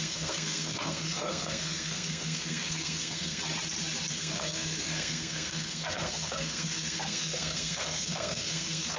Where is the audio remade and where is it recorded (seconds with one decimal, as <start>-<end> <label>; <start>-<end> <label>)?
0.0-3.4 remade; 3.4-4.1 recorded; 4.1-9.0 remade